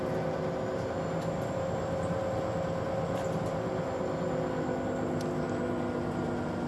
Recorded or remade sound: recorded